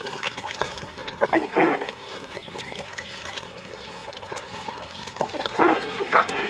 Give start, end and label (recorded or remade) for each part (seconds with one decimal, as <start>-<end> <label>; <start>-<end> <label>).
0.0-6.5 remade